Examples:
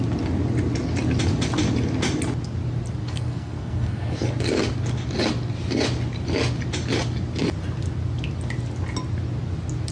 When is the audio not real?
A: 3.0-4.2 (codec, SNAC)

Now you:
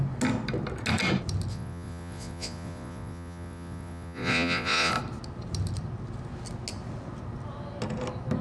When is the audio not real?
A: 1.5-4.9 (vocoder, Vocos)

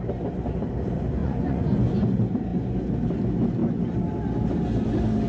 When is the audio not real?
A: 1.2-1.9 (vocoder, Vocos)

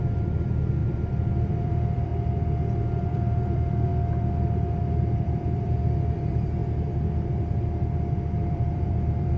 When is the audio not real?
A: 0.0-2.1 (vocoder, BigVGAN v2); 3.0-3.9; 4.8-6.6; 8.5-9.4

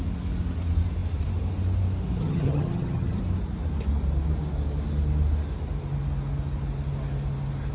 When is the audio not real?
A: 2.2-3.2 (vocoder, HiFi-GAN)

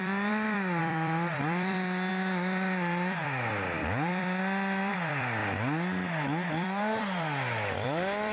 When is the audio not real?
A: 0.0-5.4 (vocoder, BigVGAN v2); 6.5-8.3

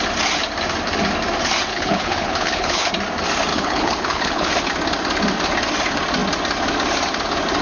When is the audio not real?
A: 1.7-2.9 (codec, HILCodec); 3.5-4.5